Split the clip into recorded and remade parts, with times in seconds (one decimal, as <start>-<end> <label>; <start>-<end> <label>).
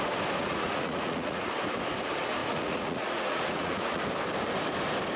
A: 0.0-0.4 recorded; 0.4-1.5 remade; 1.5-2.4 recorded; 2.4-4.0 remade; 4.0-5.2 recorded